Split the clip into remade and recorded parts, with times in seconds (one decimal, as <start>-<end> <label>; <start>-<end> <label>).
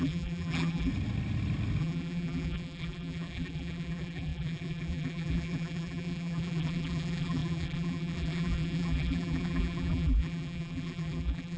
0.0-0.9 remade; 0.9-1.8 recorded; 1.8-11.6 remade